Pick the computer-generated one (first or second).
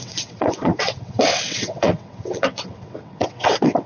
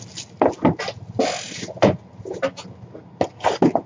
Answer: first